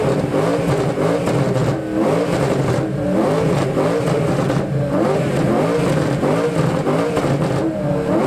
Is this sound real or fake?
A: real